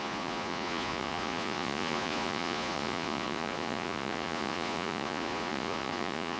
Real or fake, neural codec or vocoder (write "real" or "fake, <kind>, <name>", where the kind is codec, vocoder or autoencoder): fake, vocoder, Vocos